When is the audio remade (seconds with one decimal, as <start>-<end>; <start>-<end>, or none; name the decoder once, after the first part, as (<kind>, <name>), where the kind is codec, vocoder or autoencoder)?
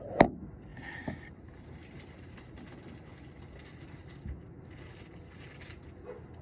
none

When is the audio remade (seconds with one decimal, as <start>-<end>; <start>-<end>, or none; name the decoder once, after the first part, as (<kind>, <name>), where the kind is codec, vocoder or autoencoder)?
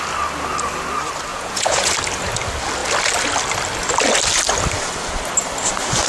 1.3-1.9 (vocoder, Vocos)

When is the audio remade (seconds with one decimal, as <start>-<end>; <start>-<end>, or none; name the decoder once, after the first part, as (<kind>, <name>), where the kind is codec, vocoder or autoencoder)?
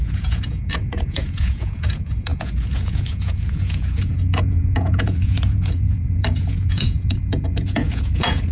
0.0-8.5 (vocoder, Vocos)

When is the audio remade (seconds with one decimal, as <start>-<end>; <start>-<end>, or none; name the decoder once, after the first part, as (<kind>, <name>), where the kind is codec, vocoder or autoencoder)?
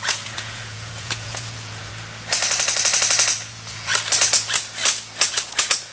0.0-1.9 (vocoder, Vocos); 3.5-3.9; 5.2-5.9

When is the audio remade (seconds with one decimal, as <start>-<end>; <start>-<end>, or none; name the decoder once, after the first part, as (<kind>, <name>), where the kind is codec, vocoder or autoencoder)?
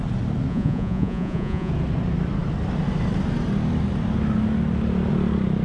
0.5-1.7 (vocoder, Vocos)